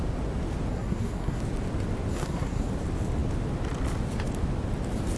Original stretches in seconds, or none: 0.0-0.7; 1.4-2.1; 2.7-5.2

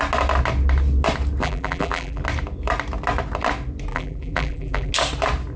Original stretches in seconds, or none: 0.0-1.4; 2.2-3.9; 4.9-5.6

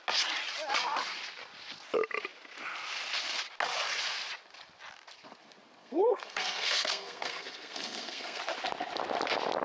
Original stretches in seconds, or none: 0.0-5.8; 8.4-9.6

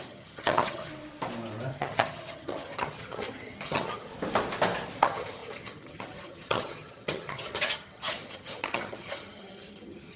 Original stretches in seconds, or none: 0.9-1.7; 4.1-5.0

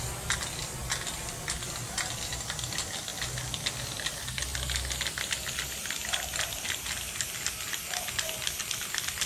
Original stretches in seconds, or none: 0.0-9.3

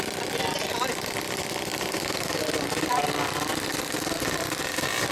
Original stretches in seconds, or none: 0.0-1.7; 2.4-5.1